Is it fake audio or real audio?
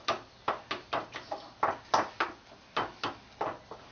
real